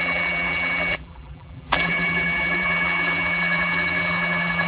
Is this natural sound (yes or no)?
no